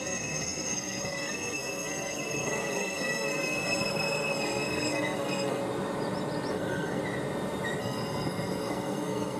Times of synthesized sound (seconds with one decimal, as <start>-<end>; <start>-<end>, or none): 0.0-5.6; 6.5-7.0; 7.8-9.4